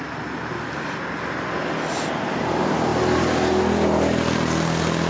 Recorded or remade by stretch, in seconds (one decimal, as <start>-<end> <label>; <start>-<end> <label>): 0.0-5.1 recorded